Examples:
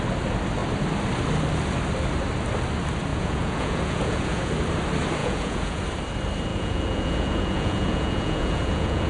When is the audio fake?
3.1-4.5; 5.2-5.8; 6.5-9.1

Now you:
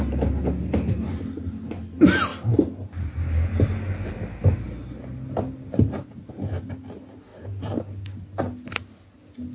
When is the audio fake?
none

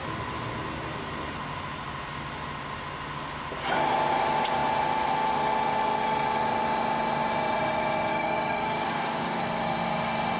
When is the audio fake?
8.1-9.4